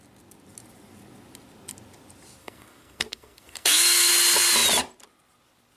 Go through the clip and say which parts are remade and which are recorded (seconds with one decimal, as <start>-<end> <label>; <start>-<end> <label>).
0.0-2.4 recorded; 2.4-4.1 remade; 4.1-5.8 recorded